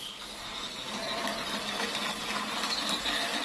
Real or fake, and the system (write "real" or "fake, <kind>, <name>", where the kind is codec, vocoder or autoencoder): real